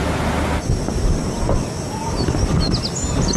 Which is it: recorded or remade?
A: recorded